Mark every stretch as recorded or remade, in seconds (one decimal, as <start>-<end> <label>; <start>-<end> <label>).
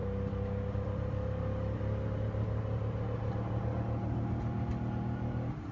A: 0.0-5.7 recorded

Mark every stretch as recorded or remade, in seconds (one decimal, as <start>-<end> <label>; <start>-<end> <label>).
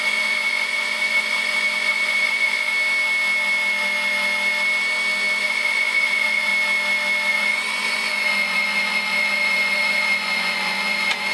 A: 0.0-2.7 remade; 2.7-5.4 recorded; 5.4-6.5 remade; 6.5-7.3 recorded; 7.3-11.3 remade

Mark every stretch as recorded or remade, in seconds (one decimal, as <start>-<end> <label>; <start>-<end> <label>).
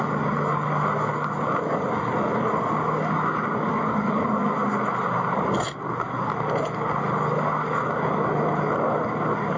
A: 0.0-9.6 recorded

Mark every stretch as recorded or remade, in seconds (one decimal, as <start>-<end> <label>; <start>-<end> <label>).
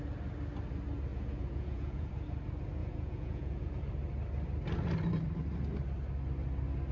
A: 0.0-1.1 recorded; 1.1-2.1 remade; 2.1-2.8 recorded; 2.8-3.8 remade; 3.8-6.9 recorded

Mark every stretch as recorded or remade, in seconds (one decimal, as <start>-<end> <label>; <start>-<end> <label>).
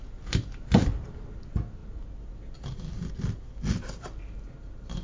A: 0.0-5.0 recorded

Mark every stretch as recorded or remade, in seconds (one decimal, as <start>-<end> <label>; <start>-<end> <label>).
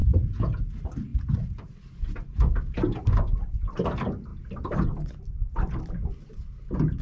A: 0.0-0.7 remade; 0.7-7.0 recorded